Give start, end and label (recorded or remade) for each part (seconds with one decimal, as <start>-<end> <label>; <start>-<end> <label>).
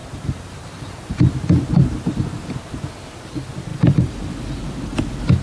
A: 0.0-1.3 remade; 1.3-3.7 recorded; 3.7-4.3 remade; 4.3-5.4 recorded